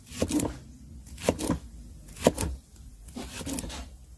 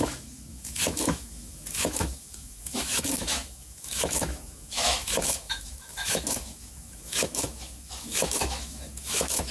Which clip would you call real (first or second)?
first